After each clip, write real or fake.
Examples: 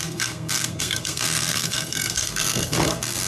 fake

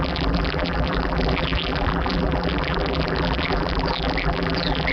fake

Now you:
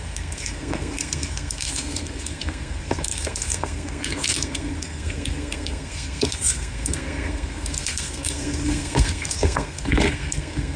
fake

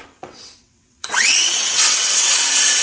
fake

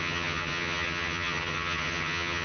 fake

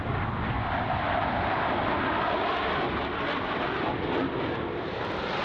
real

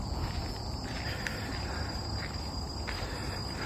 real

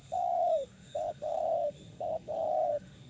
fake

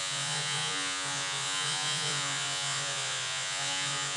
fake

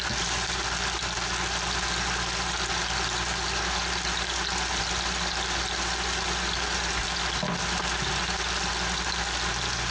real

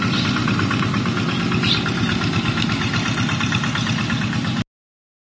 real